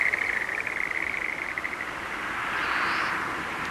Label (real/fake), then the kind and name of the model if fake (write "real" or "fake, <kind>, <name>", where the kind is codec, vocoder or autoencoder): real